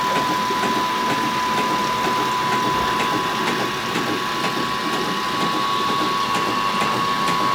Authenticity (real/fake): real